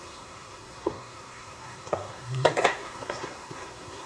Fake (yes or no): yes